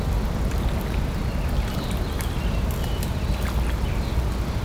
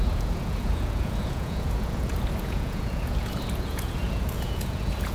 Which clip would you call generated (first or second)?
second